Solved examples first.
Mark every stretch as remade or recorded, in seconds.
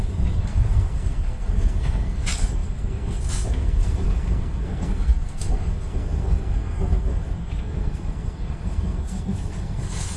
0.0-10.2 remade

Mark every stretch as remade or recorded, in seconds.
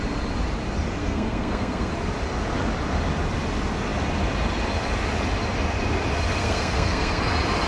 0.0-1.0 recorded; 1.0-1.9 remade; 1.9-6.4 recorded; 6.4-7.2 remade; 7.2-7.7 recorded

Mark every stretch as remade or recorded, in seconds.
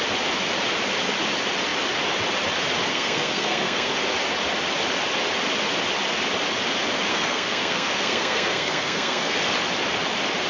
0.0-2.9 recorded; 2.9-3.9 remade; 3.9-7.1 recorded; 7.1-9.4 remade; 9.4-10.5 recorded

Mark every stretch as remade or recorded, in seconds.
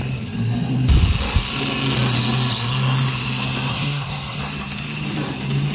0.0-3.7 recorded; 3.7-4.4 remade; 4.4-5.7 recorded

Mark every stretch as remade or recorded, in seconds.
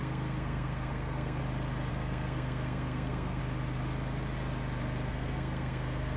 0.0-1.4 remade; 1.4-1.9 recorded; 1.9-3.4 remade; 3.4-5.1 recorded; 5.1-6.2 remade